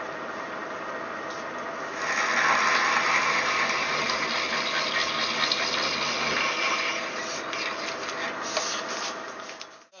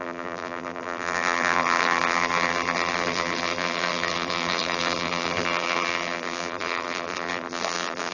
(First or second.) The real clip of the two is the first